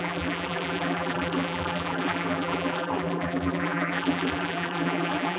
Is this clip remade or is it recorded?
remade